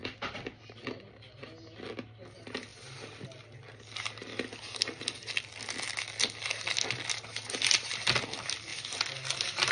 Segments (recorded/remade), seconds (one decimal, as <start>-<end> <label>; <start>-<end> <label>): 0.0-9.7 recorded